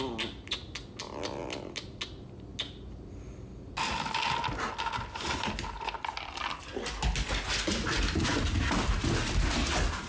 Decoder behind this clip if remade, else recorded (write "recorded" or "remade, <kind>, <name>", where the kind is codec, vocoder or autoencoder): recorded